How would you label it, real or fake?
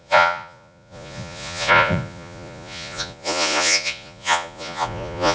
fake